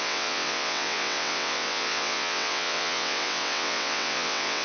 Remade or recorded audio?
remade